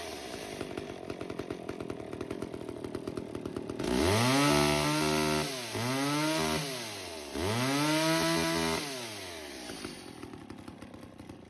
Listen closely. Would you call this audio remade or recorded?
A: recorded